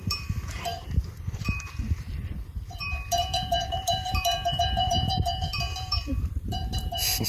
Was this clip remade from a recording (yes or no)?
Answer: yes